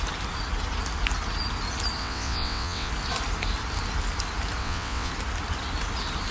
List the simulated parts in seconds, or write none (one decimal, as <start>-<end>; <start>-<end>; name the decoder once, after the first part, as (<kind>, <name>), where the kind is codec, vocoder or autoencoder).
2.0-2.9 (vocoder, WaveNeXt); 4.6-5.1